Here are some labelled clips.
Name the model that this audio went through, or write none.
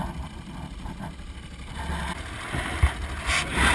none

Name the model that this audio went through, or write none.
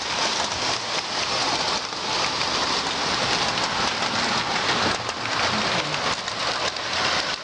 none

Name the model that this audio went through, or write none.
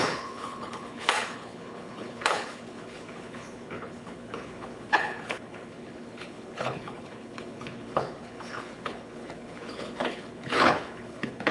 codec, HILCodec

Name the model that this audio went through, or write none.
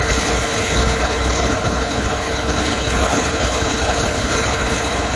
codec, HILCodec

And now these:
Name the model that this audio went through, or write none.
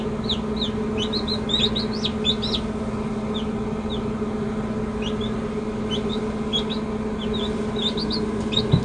none